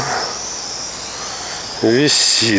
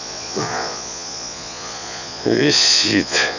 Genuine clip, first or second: first